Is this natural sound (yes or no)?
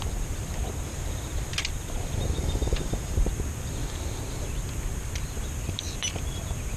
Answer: no